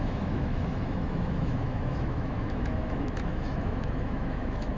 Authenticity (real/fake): fake